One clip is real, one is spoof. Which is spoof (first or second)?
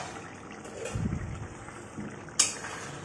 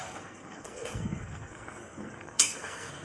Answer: second